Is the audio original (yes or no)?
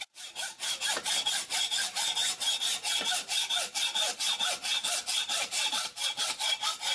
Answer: yes